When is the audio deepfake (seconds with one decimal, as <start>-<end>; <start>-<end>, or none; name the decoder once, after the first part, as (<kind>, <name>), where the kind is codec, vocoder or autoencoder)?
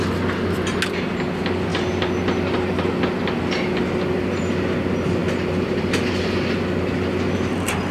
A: none